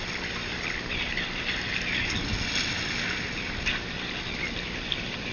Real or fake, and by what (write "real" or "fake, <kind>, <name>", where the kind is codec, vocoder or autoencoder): real